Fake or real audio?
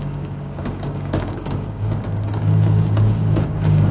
fake